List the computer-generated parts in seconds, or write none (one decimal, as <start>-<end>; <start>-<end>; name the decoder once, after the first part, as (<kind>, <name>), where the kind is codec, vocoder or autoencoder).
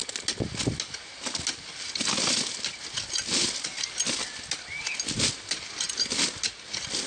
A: none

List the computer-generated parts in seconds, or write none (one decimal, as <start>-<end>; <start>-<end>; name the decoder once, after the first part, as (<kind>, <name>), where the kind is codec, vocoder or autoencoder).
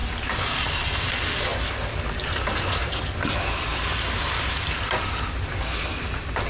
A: none